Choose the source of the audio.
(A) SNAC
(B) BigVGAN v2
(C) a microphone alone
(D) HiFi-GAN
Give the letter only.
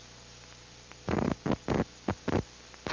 C